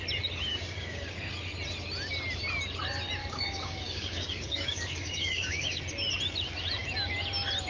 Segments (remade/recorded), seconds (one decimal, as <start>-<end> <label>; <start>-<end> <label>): 0.0-0.5 recorded; 0.5-1.3 remade; 1.3-3.2 recorded; 3.2-5.8 remade; 5.8-7.7 recorded